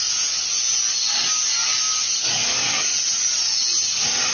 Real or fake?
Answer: real